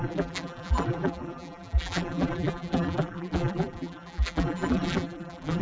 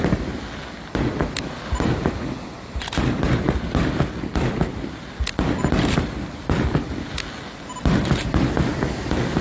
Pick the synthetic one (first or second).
first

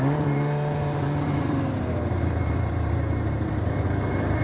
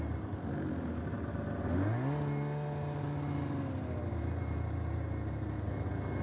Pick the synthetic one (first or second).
first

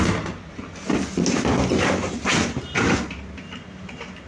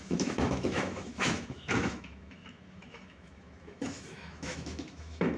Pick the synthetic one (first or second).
second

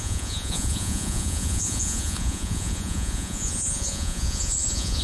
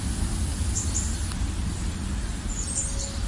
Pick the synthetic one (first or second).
first